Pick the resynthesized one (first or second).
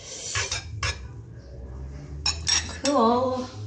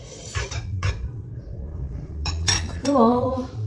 second